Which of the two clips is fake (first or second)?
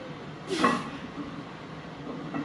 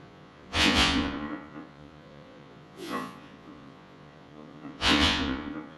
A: second